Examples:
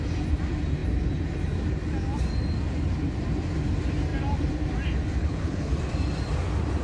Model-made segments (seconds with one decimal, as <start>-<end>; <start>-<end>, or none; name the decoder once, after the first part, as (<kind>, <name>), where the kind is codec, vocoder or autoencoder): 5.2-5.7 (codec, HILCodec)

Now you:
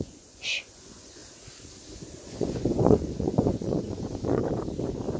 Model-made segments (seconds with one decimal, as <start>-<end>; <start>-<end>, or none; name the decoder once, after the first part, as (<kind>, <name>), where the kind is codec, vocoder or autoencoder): 0.0-1.2 (vocoder, Vocos); 2.2-4.4

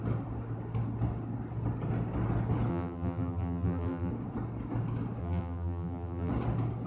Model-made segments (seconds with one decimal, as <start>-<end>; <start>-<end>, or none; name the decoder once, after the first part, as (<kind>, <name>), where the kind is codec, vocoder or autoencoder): 2.7-4.1 (vocoder, BigVGAN v2); 5.2-6.3

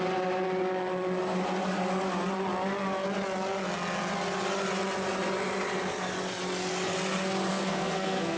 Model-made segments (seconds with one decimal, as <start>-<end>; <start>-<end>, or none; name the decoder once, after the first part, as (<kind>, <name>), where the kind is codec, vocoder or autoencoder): 7.5-8.4 (codec, SNAC)

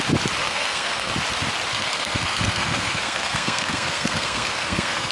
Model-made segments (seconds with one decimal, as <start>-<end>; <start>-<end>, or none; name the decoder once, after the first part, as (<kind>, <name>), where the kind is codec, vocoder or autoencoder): 0.4-1.1 (codec, SNAC); 1.7-5.1

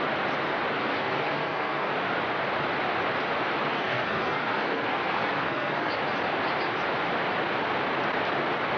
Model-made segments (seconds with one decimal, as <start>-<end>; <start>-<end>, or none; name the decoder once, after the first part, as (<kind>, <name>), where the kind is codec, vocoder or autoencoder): 0.8-1.9 (codec, SNAC); 3.7-5.9

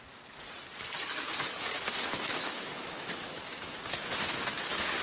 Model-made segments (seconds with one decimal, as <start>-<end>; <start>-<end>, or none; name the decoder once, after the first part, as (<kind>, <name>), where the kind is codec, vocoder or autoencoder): 1.5-4.5 (autoencoder, DAC-VAE)

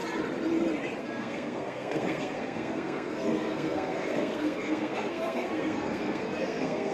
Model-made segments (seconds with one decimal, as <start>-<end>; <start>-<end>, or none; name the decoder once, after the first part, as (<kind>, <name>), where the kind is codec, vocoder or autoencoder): 1.0-6.9 (codec, SNAC)